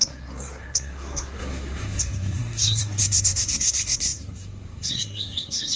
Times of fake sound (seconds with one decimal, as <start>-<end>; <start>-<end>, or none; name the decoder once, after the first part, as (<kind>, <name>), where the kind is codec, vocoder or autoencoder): 0.0-5.8 (codec, SNAC)